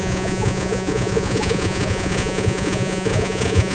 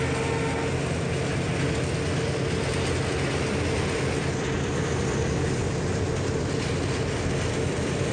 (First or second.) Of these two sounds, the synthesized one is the first